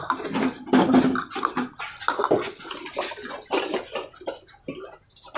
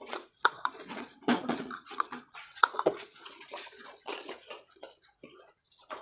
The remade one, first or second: second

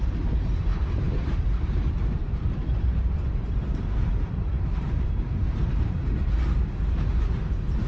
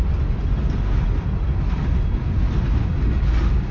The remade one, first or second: first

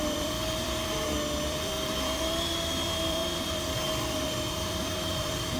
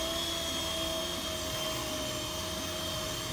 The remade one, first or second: first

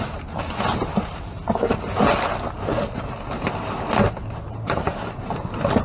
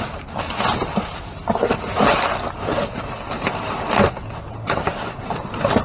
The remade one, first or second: second